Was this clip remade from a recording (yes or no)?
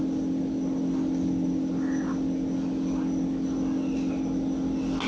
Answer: no